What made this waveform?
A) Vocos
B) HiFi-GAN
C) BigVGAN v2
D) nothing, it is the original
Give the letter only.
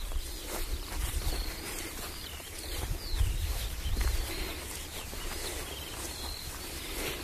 C